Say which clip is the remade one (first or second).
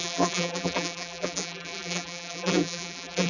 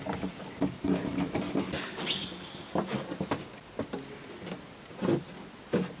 first